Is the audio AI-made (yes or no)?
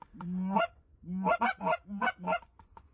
yes